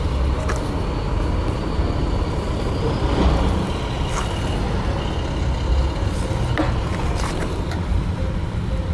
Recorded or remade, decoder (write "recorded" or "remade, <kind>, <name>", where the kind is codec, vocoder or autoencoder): recorded